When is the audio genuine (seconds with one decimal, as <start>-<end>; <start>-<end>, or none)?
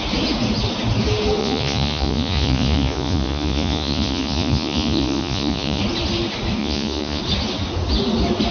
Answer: 0.0-1.4; 5.8-6.6; 7.2-8.5